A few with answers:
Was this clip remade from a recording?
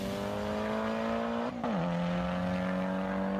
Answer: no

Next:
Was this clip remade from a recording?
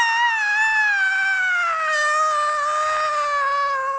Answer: no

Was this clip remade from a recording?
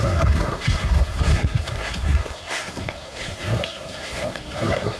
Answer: yes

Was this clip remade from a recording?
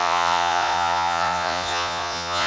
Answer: yes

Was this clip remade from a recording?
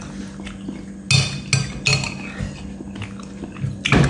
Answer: no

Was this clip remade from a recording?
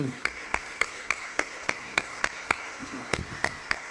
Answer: yes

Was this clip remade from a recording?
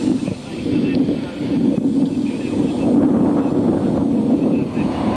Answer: no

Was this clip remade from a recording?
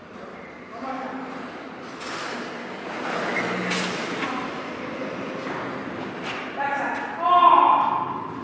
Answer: no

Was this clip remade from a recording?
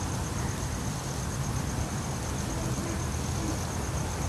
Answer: no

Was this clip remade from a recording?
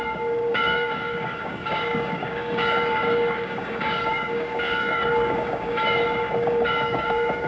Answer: yes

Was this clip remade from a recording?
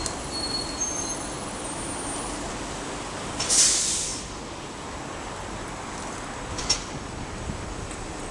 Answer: no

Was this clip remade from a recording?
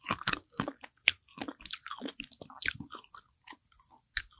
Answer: no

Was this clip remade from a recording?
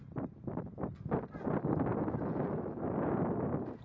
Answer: no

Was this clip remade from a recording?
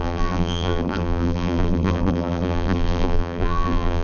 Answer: yes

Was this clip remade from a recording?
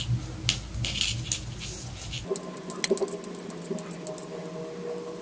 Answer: no